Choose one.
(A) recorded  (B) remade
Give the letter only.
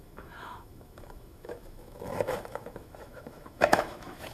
B